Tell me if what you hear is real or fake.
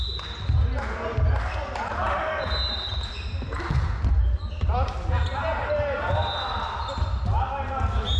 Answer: real